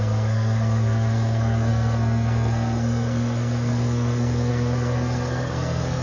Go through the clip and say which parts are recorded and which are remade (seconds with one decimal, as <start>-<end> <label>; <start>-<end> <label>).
0.0-6.0 remade